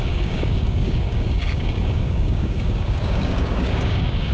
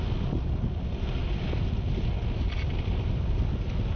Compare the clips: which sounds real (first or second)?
second